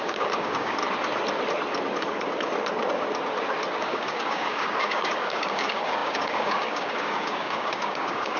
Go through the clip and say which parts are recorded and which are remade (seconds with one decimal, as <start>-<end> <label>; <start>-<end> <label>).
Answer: 0.0-0.8 remade; 0.8-3.8 recorded; 3.8-8.4 remade